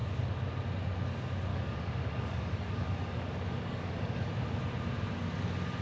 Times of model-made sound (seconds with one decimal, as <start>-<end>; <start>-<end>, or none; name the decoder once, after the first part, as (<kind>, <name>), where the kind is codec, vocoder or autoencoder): 1.5-4.3 (codec, DAC)